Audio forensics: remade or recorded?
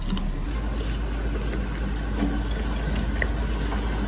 recorded